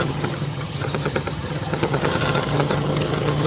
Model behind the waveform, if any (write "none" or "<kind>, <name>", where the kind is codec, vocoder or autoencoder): vocoder, HiFi-GAN